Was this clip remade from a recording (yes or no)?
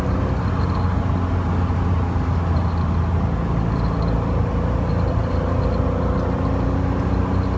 no